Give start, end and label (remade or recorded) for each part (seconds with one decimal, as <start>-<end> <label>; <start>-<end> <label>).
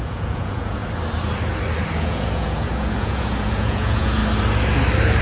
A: 0.0-0.8 remade; 0.8-2.0 recorded; 2.0-4.2 remade; 4.2-5.2 recorded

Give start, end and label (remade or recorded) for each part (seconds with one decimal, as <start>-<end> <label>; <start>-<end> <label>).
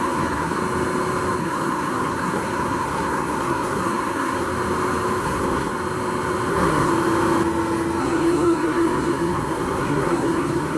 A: 0.0-0.6 remade; 0.6-1.4 recorded; 1.4-4.5 remade; 4.5-5.2 recorded; 5.2-5.7 remade; 5.7-6.5 recorded; 6.5-6.9 remade; 6.9-8.0 recorded; 8.0-10.8 remade